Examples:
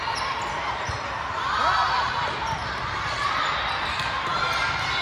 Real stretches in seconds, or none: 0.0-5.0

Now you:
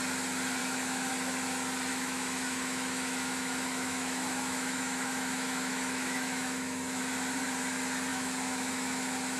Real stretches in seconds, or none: 0.0-0.6; 1.1-1.9; 7.0-8.1

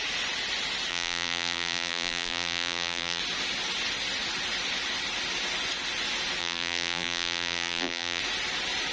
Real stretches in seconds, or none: 0.0-0.9; 3.2-6.4; 8.2-8.9

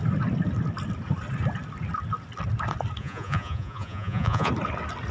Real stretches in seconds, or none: 0.0-3.0; 4.5-5.1

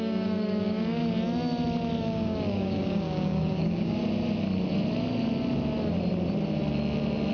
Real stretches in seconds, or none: 1.0-2.0; 4.0-7.3